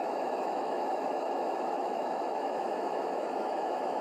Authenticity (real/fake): fake